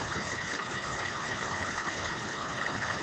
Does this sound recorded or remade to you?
remade